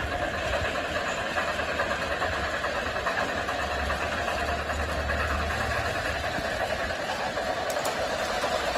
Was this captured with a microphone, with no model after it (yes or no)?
yes